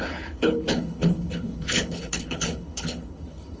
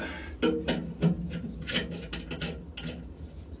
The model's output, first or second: first